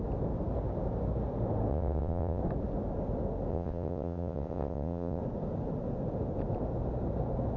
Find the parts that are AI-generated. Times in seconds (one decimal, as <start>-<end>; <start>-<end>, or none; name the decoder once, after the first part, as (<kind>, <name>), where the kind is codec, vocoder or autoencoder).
1.7-2.4 (vocoder, WaveNeXt); 3.5-5.2